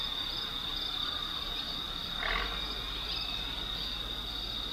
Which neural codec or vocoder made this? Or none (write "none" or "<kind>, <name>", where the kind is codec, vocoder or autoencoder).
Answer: none